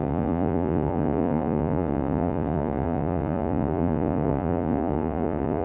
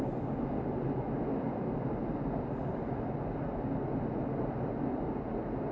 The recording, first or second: second